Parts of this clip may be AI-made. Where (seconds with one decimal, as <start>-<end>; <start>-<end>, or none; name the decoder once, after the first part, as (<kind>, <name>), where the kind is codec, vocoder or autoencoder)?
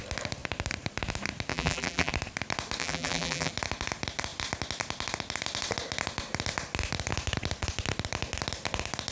1.5-2.1 (vocoder, BigVGAN v2); 2.8-3.5